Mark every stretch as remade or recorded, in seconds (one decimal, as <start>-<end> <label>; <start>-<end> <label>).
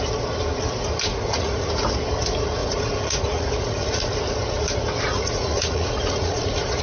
0.0-1.1 recorded; 1.1-1.7 remade; 1.7-2.6 recorded; 2.6-4.1 remade; 4.1-5.1 recorded; 5.1-6.8 remade